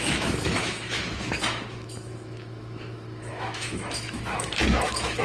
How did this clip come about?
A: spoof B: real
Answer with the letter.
A